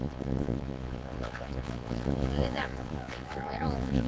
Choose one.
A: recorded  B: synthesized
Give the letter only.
B